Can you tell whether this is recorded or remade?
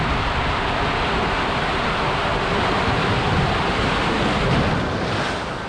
recorded